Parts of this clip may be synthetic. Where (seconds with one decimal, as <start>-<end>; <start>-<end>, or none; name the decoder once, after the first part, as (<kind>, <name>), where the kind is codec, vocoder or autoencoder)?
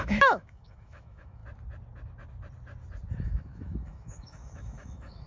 0.0-1.4 (autoencoder, DAC-VAE); 3.2-5.3